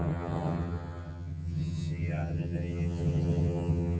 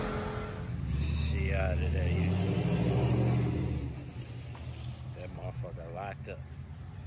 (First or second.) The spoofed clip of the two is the first